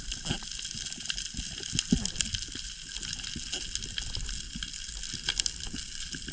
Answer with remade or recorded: recorded